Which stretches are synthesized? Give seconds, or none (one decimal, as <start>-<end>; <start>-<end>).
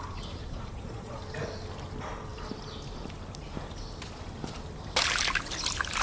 0.4-1.2